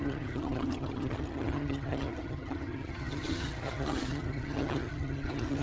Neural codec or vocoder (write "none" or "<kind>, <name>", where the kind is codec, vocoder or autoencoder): vocoder, HiFi-GAN